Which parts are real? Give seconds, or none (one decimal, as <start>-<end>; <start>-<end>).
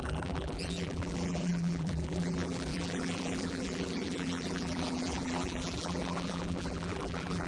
none